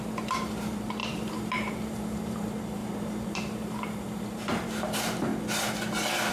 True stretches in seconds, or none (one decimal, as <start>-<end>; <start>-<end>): 5.3-6.3